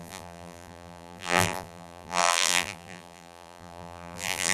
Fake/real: fake